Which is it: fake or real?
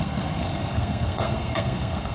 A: fake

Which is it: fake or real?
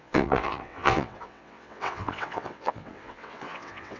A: fake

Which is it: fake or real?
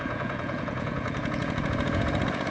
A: fake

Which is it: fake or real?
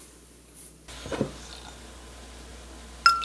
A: real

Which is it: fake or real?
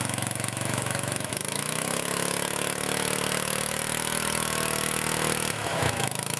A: fake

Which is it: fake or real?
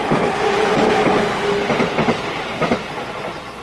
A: real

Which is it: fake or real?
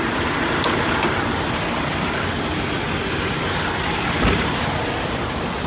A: real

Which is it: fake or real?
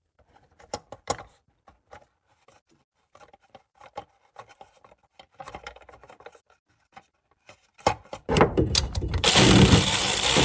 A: fake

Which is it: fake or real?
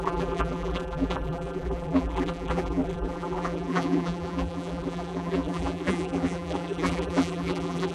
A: fake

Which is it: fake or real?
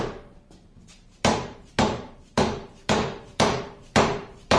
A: fake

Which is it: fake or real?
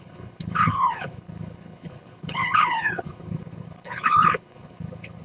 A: fake